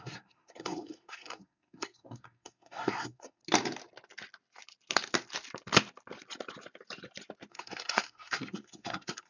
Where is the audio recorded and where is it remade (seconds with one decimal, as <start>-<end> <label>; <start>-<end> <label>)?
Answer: 0.0-3.4 remade; 3.4-7.5 recorded; 7.5-9.3 remade